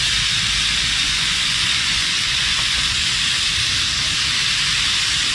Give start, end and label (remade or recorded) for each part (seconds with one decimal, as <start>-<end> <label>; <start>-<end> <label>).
0.0-1.0 recorded; 1.0-3.1 remade; 3.1-5.3 recorded